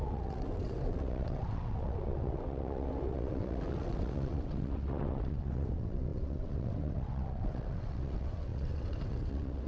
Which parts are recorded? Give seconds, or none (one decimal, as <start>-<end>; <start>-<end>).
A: none